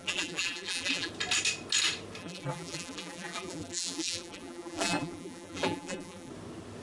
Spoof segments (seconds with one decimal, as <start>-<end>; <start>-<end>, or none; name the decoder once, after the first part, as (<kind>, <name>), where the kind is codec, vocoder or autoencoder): 0.0-1.1 (vocoder, BigVGAN v2); 2.2-6.3